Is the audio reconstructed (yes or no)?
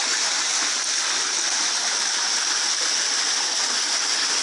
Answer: no